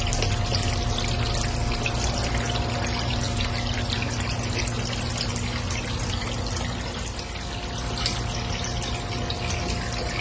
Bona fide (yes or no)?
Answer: yes